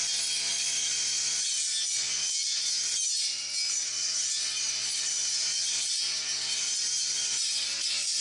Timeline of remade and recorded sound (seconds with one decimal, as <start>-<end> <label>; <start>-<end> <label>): 0.0-8.2 recorded